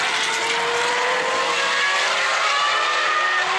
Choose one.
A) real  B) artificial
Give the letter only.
A